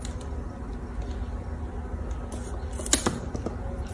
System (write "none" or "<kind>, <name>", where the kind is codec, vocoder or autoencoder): none